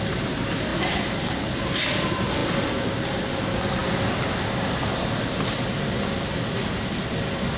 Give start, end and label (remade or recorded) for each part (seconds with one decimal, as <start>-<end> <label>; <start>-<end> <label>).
0.0-0.7 recorded; 0.7-1.2 remade; 1.2-3.8 recorded; 3.8-6.9 remade; 6.9-7.6 recorded